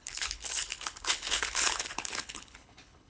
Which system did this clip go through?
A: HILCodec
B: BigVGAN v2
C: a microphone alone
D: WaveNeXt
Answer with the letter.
A